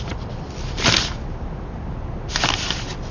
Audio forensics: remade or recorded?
recorded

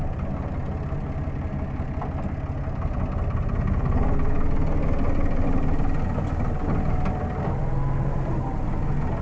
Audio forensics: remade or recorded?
recorded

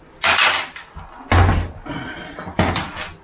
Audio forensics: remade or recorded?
recorded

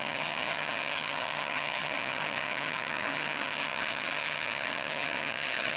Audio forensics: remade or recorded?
remade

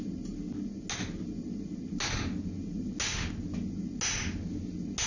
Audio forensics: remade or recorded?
recorded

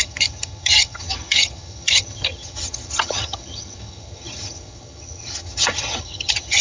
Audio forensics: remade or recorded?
remade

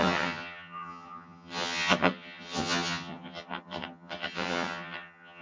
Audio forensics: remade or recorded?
remade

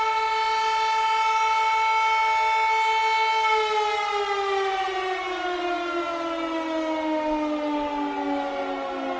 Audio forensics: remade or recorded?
recorded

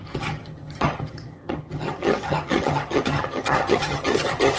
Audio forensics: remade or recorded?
remade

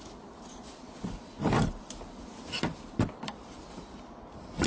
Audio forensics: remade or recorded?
recorded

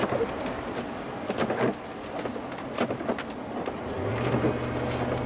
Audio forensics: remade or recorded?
recorded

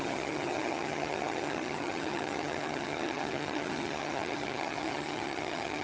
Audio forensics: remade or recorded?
remade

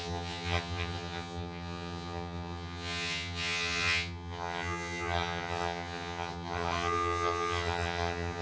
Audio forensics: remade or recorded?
remade